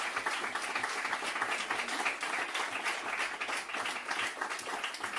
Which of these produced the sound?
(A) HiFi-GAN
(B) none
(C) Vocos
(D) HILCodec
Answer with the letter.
B